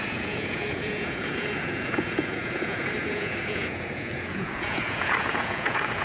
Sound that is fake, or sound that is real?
fake